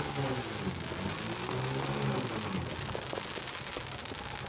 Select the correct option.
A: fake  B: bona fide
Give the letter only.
B